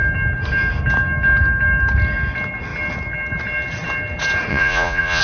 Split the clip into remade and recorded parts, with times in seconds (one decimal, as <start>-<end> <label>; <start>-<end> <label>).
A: 0.0-4.5 recorded; 4.5-5.2 remade